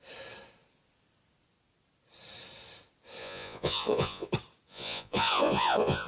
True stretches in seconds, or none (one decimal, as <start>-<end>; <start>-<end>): 0.0-3.2; 4.3-4.7